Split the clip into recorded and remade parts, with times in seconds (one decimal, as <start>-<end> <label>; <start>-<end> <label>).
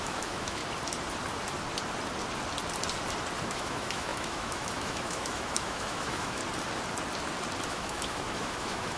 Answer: 0.0-0.6 remade; 0.6-3.4 recorded; 3.4-6.4 remade; 6.4-7.7 recorded; 7.7-9.0 remade